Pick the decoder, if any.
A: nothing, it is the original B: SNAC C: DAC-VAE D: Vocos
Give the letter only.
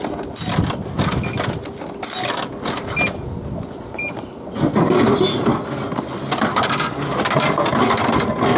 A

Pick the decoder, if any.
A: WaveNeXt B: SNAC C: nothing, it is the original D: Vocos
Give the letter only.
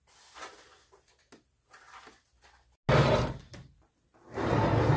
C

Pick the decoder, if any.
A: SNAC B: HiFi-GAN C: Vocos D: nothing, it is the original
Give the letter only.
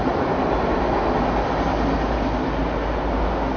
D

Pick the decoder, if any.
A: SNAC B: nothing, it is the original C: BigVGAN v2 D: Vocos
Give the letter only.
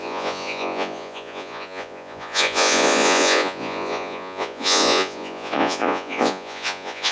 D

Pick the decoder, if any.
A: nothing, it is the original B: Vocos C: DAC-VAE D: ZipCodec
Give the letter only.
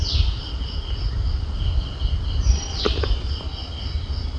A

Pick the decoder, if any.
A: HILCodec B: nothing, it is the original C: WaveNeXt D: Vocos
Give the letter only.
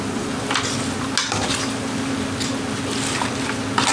B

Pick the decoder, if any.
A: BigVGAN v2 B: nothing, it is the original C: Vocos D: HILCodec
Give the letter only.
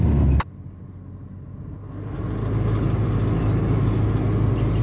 B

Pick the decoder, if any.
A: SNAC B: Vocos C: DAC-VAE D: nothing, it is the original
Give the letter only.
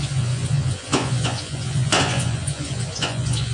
B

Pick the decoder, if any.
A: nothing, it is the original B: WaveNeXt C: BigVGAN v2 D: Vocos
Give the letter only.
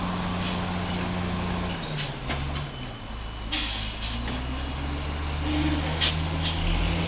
A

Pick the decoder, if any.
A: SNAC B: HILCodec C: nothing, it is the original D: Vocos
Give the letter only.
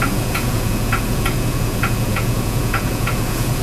D